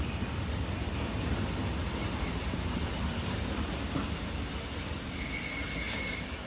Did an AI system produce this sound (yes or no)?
no